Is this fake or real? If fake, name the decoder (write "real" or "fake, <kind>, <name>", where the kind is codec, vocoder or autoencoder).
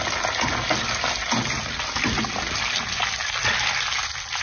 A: real